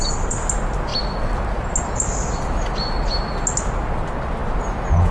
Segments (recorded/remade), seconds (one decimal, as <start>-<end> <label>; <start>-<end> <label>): 0.0-5.1 recorded